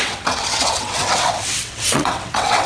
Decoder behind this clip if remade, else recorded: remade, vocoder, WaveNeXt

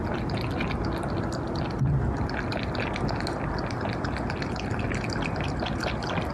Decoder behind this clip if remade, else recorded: recorded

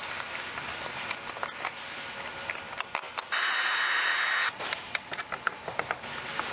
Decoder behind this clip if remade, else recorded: recorded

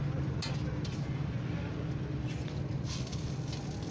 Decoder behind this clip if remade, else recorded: recorded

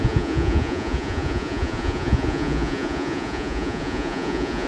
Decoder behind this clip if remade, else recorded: remade, vocoder, Vocos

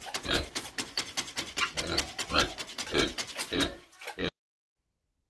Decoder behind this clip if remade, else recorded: remade, vocoder, Vocos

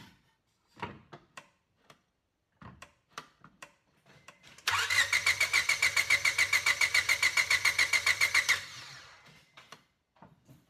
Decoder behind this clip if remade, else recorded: remade, vocoder, BigVGAN v2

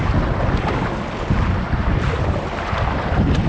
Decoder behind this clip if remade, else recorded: recorded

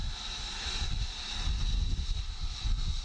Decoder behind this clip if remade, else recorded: recorded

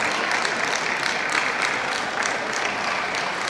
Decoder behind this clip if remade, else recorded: recorded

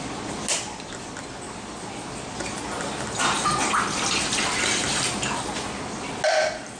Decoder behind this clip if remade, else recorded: recorded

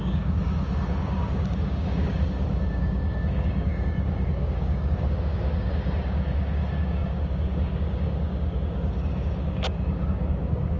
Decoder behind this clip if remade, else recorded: remade, codec, DAC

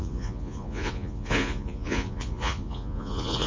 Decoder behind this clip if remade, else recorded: remade, vocoder, Vocos